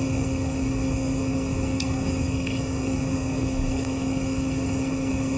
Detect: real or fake fake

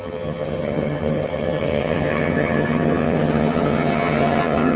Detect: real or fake fake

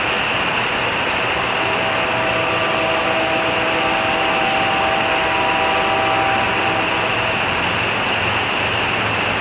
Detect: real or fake real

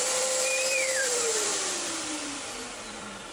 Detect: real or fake fake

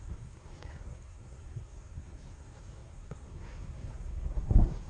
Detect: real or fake fake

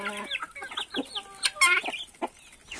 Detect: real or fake real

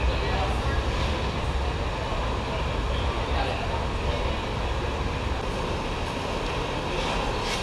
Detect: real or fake real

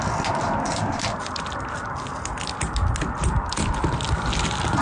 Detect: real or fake real